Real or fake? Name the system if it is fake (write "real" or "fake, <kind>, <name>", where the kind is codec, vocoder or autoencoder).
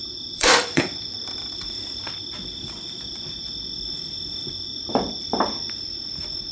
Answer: fake, vocoder, BigVGAN v2